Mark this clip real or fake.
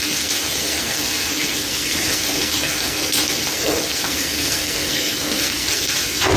fake